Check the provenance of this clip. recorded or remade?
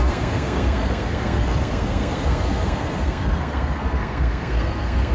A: remade